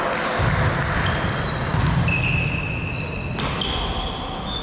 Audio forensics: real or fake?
real